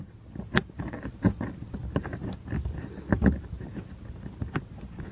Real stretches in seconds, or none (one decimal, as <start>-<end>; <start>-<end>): 0.0-5.1